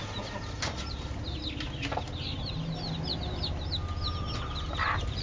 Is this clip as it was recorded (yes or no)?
yes